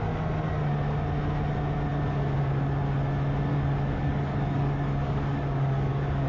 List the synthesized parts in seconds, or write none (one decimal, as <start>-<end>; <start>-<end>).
3.5-6.3